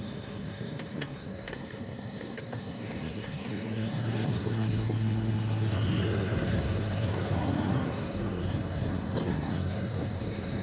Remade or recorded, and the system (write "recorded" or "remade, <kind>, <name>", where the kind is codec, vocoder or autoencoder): remade, codec, SNAC